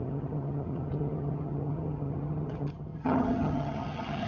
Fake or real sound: fake